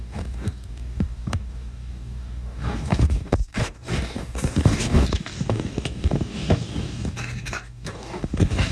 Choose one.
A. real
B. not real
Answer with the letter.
B